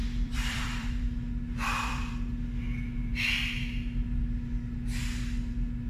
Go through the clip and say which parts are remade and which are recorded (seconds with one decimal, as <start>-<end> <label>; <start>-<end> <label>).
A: 0.0-1.0 remade; 1.0-1.6 recorded; 1.6-2.1 remade; 2.1-5.9 recorded

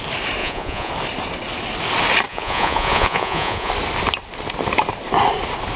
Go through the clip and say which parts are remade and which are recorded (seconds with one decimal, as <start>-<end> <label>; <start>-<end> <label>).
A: 0.0-0.4 recorded; 0.4-0.9 remade; 0.9-2.3 recorded; 2.3-3.7 remade; 3.7-5.8 recorded

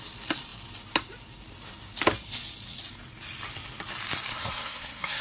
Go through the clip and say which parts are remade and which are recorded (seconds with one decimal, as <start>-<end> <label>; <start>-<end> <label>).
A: 0.0-4.3 recorded; 4.3-5.2 remade

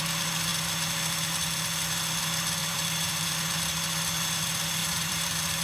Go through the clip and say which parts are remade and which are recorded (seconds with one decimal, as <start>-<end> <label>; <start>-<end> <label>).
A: 0.0-2.6 recorded; 2.6-3.3 remade; 3.3-4.8 recorded; 4.8-5.6 remade